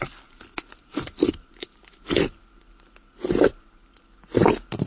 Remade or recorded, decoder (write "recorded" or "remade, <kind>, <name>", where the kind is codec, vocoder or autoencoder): recorded